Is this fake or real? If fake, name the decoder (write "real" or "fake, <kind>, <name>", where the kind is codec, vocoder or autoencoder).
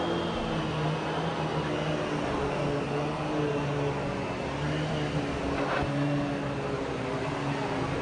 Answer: real